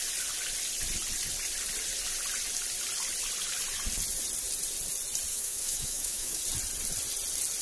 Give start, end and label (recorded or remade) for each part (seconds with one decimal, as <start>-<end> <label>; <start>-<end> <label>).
0.0-5.3 recorded; 5.3-6.4 remade; 6.4-7.6 recorded